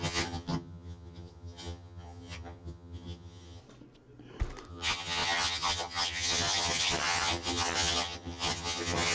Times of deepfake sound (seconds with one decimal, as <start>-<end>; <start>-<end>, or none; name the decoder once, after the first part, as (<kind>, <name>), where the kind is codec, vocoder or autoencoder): 0.0-3.6 (vocoder, HiFi-GAN); 4.7-9.1